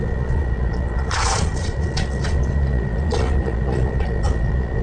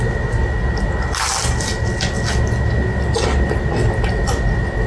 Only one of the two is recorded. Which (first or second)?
second